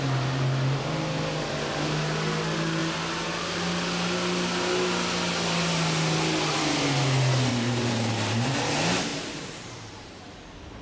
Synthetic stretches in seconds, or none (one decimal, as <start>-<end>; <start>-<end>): 7.5-8.7; 9.1-10.4